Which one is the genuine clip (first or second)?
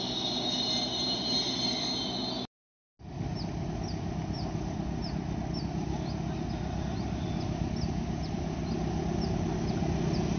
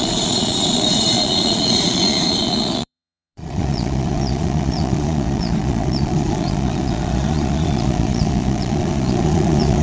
first